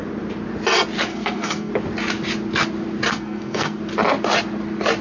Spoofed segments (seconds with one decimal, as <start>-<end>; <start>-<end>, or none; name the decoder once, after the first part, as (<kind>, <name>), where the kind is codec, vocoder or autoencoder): 1.1-1.7 (codec, SNAC); 3.1-3.8